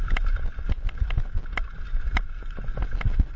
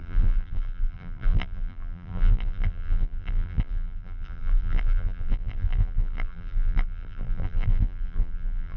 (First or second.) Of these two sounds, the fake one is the second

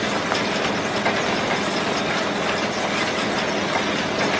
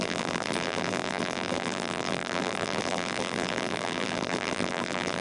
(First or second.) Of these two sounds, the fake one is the second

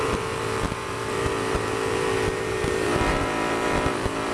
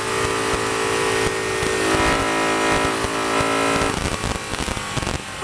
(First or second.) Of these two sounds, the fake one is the first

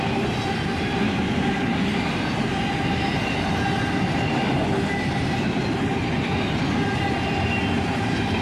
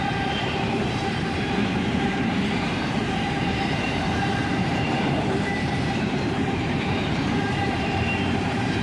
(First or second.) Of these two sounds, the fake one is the second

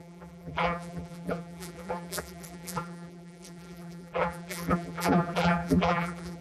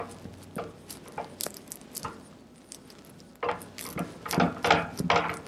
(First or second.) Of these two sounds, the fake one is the first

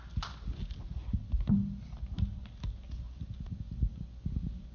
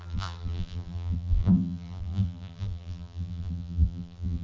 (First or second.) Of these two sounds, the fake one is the second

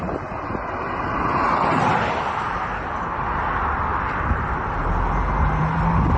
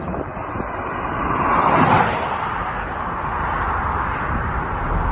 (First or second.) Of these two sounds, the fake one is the second